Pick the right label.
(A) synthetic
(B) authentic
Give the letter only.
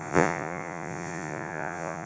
A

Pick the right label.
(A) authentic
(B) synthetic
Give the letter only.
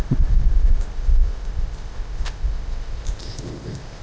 B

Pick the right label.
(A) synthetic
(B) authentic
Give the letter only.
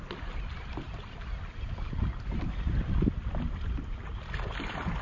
B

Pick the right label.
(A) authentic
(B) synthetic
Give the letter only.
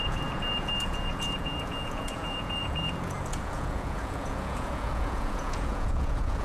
B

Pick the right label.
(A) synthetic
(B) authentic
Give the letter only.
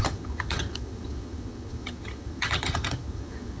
A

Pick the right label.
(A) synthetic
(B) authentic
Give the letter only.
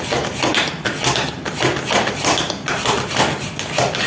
B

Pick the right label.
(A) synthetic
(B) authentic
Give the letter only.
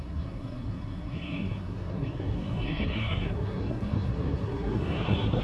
A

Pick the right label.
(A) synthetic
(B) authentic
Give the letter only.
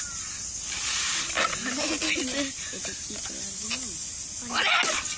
B